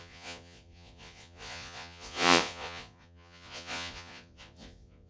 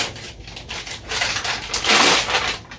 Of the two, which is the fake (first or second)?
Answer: first